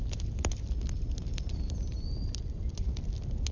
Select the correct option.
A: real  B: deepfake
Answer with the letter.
A